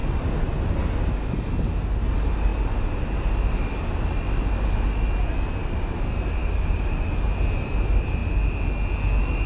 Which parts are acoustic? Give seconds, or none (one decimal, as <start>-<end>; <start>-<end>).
0.0-6.4; 7.0-9.5